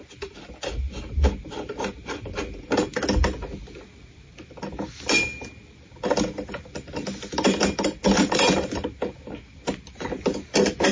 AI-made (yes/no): no